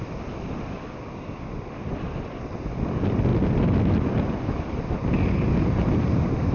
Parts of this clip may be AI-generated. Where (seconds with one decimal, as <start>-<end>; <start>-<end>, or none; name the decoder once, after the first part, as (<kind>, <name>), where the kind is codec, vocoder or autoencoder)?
none